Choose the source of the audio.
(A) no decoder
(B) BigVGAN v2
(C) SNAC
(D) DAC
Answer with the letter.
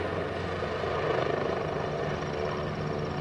A